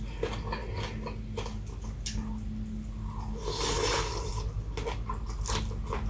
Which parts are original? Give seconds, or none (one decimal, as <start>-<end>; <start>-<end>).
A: 0.0-6.1